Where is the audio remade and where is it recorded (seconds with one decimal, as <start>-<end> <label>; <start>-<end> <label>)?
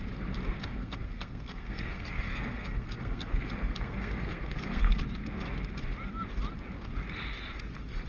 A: 0.0-0.6 recorded; 0.6-5.0 remade; 5.0-8.1 recorded